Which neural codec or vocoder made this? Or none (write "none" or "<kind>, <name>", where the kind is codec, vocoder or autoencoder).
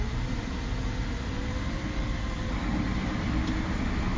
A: none